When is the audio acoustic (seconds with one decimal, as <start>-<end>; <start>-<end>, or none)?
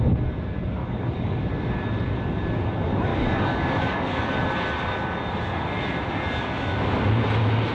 0.0-0.8; 1.4-3.1; 4.3-7.7